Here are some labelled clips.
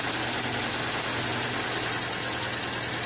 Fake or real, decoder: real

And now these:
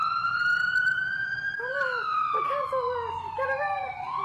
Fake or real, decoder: real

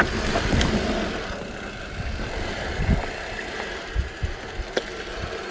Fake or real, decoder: real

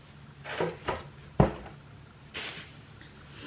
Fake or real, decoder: real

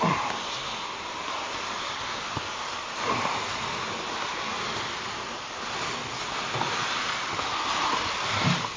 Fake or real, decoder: real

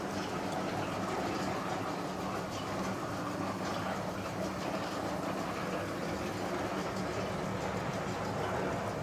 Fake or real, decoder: real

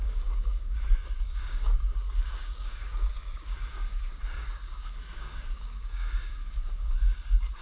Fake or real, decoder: fake, codec, DAC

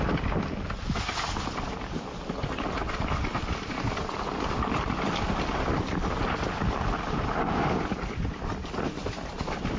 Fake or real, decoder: real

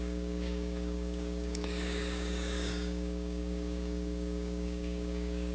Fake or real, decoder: fake, codec, DAC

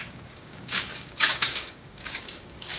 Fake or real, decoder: fake, codec, DAC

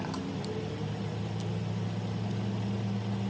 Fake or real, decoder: real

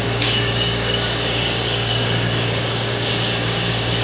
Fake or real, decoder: fake, codec, DAC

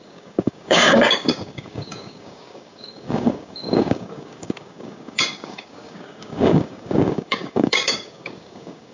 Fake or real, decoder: fake, codec, DAC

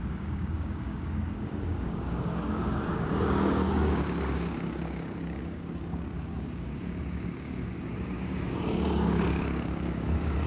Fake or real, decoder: fake, codec, DAC